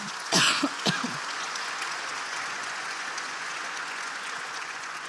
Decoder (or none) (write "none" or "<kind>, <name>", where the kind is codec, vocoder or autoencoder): vocoder, Vocos